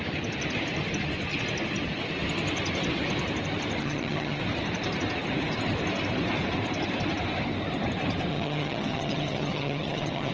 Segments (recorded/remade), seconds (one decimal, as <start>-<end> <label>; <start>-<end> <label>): 0.0-3.8 recorded; 3.8-4.4 remade; 4.4-8.3 recorded; 8.3-10.3 remade